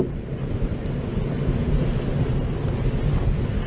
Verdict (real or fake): real